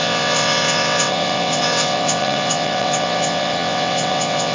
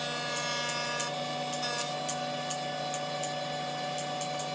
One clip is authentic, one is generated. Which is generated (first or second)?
first